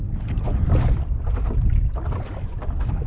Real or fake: real